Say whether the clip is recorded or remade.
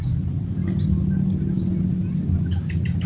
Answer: recorded